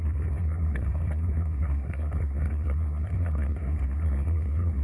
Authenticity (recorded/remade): remade